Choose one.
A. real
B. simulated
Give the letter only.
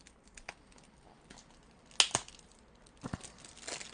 A